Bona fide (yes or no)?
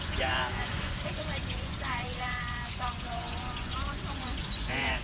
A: no